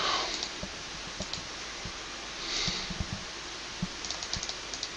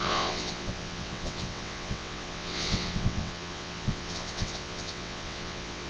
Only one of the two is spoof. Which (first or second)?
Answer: second